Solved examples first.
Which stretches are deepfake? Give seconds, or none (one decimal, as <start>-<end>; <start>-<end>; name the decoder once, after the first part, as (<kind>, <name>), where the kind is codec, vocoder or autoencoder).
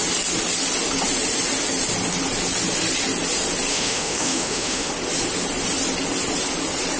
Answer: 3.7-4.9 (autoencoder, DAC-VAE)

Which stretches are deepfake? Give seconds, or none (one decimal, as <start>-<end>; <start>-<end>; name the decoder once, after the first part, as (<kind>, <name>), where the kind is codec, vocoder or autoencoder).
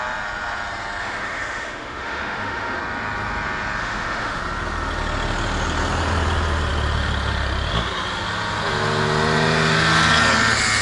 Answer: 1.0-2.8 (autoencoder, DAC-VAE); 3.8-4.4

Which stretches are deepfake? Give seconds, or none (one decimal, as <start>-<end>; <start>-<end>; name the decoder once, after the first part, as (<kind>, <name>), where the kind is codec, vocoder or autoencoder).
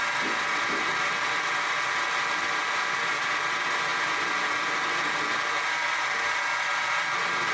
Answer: none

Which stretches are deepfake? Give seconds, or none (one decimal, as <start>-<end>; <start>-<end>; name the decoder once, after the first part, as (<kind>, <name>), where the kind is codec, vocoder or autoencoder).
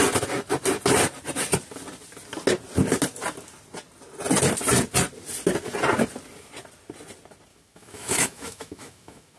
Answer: 7.5-9.4 (autoencoder, DAC-VAE)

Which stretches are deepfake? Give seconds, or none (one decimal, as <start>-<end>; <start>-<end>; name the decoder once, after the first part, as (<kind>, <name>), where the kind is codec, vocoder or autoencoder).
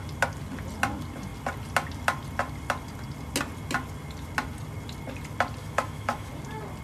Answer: 5.6-6.3 (autoencoder, DAC-VAE)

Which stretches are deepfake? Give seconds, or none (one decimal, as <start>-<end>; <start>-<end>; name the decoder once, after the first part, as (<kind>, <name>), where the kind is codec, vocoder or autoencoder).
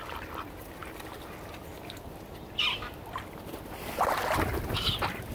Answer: none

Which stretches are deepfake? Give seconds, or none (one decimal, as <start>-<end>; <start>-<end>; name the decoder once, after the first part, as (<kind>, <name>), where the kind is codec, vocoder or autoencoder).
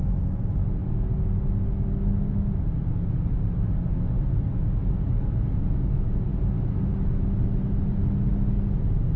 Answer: none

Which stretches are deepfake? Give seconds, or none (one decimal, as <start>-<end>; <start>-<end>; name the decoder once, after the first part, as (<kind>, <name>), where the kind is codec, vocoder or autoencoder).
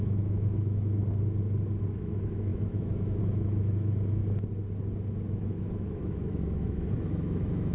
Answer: 0.0-1.0 (autoencoder, DAC-VAE); 1.9-4.2; 5.3-7.7